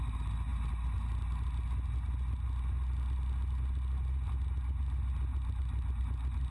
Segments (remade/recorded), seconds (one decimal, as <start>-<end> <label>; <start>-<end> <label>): 0.0-5.3 recorded; 5.3-6.0 remade; 6.0-6.5 recorded